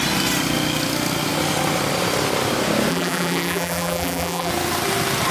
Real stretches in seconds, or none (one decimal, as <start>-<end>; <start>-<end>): 0.0-2.9; 4.5-5.3